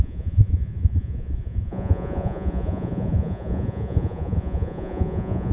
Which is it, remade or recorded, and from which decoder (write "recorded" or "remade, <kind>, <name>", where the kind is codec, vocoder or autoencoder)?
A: remade, vocoder, Vocos